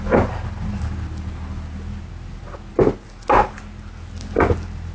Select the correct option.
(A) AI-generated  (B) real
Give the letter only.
B